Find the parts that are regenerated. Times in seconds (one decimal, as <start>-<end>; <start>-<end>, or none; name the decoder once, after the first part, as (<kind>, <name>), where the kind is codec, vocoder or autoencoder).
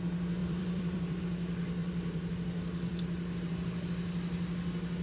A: 0.4-1.2 (vocoder, BigVGAN v2); 1.8-2.3